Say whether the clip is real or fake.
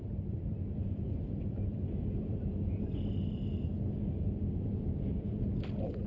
fake